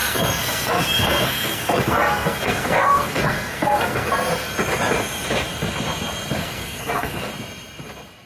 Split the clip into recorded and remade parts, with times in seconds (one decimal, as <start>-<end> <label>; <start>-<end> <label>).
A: 0.0-4.1 remade; 4.1-6.4 recorded; 6.4-7.3 remade; 7.3-8.3 recorded